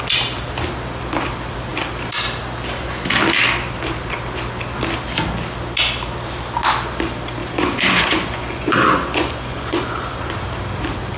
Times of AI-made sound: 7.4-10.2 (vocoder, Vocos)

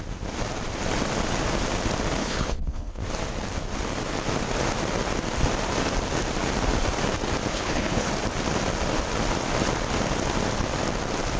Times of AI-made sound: 2.2-3.0 (codec, HILCodec); 7.5-8.1

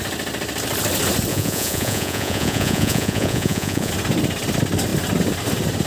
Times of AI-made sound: 1.3-3.9 (vocoder, Vocos)

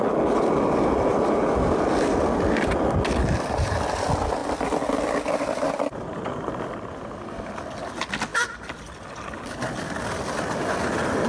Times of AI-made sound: none

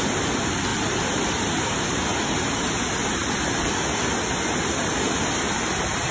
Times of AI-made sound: 0.0-2.1 (vocoder, BigVGAN v2)

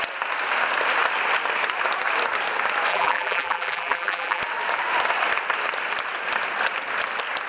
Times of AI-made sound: 2.9-4.4 (vocoder, BigVGAN v2)